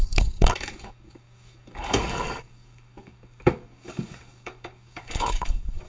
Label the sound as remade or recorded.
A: remade